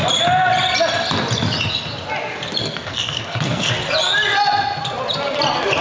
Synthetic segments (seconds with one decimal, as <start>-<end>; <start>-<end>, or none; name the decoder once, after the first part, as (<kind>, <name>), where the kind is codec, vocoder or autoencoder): 2.6-3.7 (codec, SNAC)